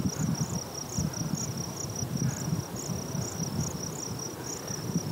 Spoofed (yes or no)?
no